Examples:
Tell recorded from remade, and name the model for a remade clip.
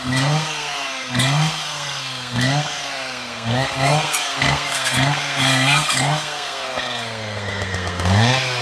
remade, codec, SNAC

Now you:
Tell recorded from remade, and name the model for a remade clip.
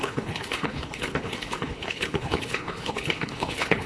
remade, codec, HILCodec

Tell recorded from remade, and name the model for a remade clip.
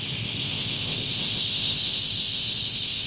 remade, codec, ZipCodec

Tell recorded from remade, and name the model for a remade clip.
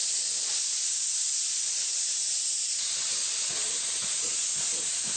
recorded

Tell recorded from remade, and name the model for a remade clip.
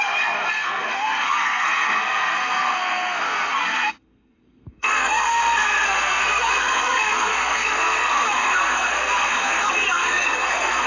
remade, codec, SNAC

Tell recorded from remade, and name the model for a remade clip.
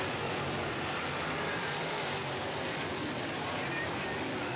remade, vocoder, BigVGAN v2